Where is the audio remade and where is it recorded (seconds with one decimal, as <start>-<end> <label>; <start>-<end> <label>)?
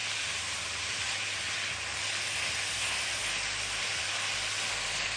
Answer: 0.0-5.2 recorded